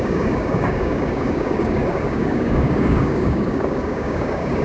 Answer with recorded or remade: remade